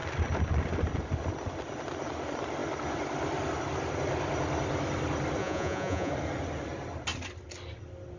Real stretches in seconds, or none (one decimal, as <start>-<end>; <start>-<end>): 0.0-5.4; 6.1-8.2